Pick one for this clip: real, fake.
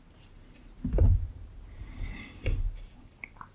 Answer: fake